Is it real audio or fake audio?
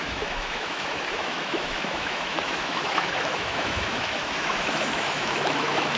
fake